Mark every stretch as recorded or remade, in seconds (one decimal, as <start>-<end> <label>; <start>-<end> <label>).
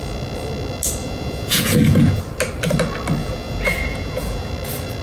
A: 0.0-1.0 recorded; 1.0-2.2 remade; 2.2-3.2 recorded; 3.2-4.5 remade; 4.5-5.0 recorded